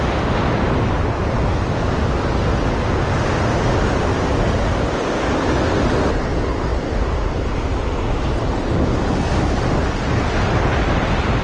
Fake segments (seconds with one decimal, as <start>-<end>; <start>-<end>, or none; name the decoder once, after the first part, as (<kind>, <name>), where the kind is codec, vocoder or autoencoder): none